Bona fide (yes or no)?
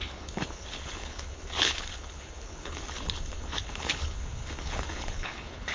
no